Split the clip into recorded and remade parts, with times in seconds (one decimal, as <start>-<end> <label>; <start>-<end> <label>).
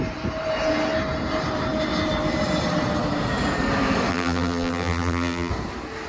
0.0-4.1 recorded; 4.1-5.5 remade; 5.5-6.1 recorded